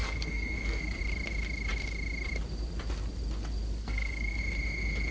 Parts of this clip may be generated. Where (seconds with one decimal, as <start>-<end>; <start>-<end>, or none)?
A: 0.0-1.0; 3.8-4.4